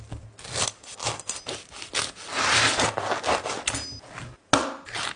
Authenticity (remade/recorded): recorded